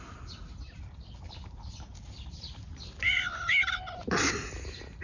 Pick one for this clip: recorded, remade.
recorded